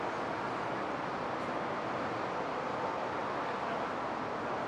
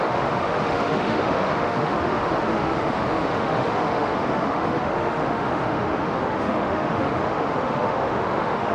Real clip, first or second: first